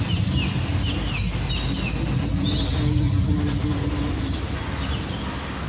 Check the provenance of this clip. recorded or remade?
recorded